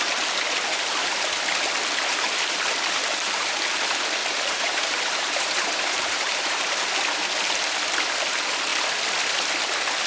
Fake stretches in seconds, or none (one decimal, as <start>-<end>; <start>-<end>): 3.0-3.5; 4.2-6.7